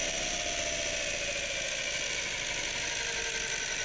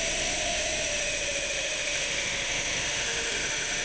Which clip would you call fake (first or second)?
second